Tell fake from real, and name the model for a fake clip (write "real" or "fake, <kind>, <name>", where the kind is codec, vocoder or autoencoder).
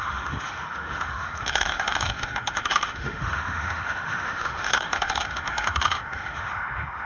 fake, autoencoder, DAC-VAE